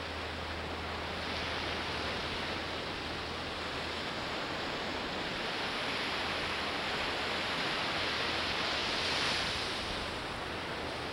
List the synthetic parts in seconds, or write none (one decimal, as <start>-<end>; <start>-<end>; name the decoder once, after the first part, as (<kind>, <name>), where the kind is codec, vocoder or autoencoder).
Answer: none